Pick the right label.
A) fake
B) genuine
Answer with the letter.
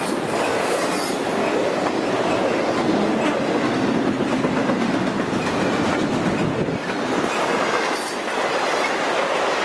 B